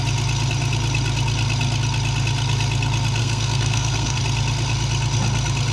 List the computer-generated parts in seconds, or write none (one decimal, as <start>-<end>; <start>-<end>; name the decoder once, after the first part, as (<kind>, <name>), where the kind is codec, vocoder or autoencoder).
3.2-4.2 (codec, SNAC)